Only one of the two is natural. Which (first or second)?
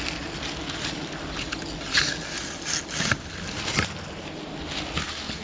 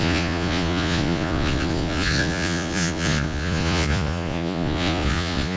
first